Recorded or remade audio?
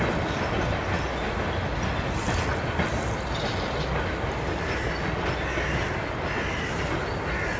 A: recorded